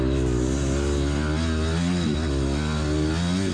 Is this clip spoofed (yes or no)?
no